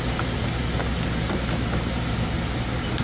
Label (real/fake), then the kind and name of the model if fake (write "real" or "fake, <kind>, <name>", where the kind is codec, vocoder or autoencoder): real